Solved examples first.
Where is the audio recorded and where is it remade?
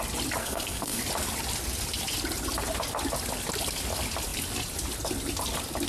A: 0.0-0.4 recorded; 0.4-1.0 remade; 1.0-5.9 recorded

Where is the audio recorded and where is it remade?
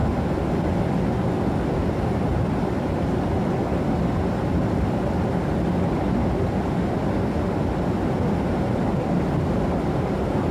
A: 0.0-10.5 recorded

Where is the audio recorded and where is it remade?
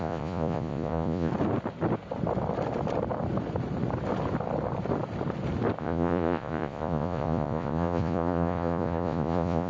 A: 0.0-1.3 remade; 1.3-5.8 recorded; 5.8-9.7 remade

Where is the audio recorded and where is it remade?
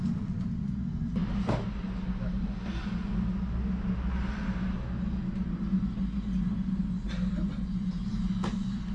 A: 0.0-8.9 recorded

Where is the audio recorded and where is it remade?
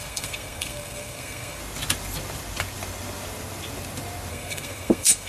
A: 0.0-1.6 remade; 1.6-4.3 recorded; 4.3-5.3 remade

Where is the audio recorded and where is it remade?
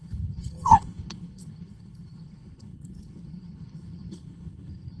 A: 0.0-5.0 remade